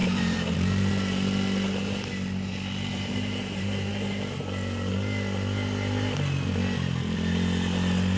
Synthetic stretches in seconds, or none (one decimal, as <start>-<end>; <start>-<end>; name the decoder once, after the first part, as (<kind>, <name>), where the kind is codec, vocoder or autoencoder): 0.0-0.9 (vocoder, BigVGAN v2); 2.9-3.9